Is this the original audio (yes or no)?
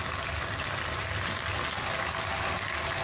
yes